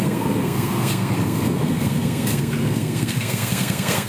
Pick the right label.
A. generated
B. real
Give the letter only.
A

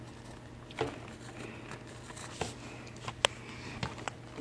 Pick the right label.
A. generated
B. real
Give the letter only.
B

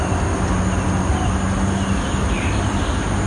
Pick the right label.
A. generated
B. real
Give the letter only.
B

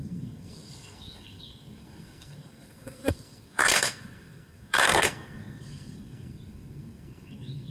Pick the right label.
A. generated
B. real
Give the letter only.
A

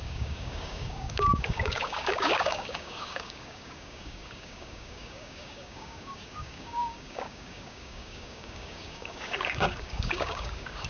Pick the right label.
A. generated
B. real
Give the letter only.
A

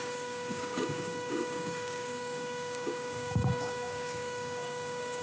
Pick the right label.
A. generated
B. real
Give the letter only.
A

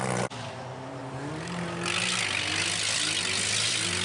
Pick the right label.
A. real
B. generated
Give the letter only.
A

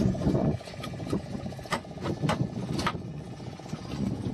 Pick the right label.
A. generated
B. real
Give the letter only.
A